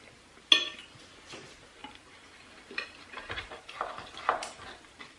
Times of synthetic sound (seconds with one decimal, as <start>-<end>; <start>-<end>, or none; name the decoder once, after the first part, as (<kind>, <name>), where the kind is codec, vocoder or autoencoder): 1.8-4.8 (vocoder, BigVGAN v2)